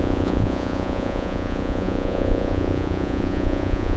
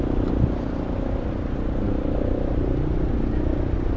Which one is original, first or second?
second